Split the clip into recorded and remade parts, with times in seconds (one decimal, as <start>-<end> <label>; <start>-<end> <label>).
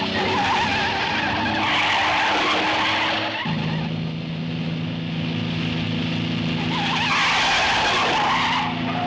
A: 0.0-9.1 recorded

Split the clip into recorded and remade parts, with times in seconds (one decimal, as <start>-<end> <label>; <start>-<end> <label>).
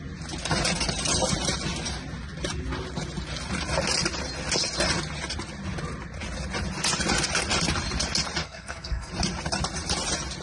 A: 0.0-8.4 recorded; 8.4-9.1 remade; 9.1-10.4 recorded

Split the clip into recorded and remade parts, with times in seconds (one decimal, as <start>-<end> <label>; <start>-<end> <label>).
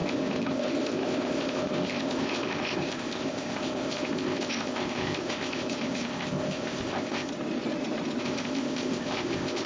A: 0.0-7.3 remade; 7.3-8.2 recorded; 8.2-9.7 remade